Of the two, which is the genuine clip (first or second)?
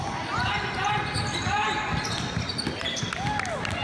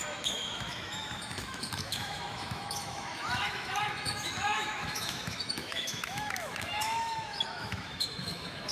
first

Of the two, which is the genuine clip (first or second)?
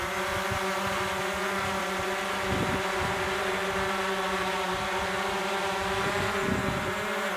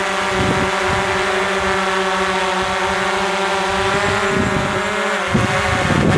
second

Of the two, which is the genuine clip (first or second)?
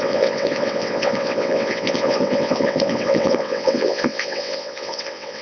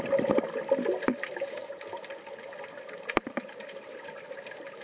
second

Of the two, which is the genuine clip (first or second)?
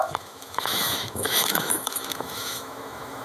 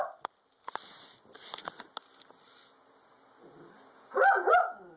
second